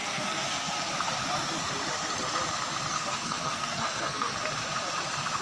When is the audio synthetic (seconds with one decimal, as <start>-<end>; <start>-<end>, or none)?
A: 0.0-0.9; 2.9-4.4